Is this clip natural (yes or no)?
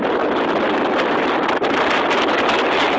yes